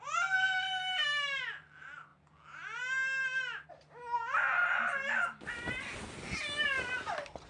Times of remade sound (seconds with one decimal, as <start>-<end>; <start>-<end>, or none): none